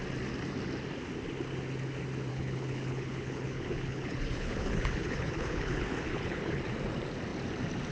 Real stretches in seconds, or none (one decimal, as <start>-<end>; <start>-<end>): 0.0-2.3; 6.6-7.9